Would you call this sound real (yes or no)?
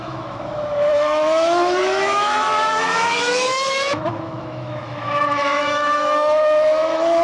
no